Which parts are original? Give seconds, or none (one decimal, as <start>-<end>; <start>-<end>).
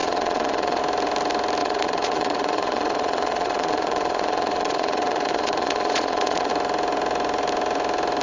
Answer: 0.8-1.6; 6.5-8.2